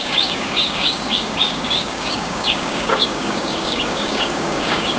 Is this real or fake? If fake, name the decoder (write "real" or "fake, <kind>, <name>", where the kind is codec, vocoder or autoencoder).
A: fake, codec, DAC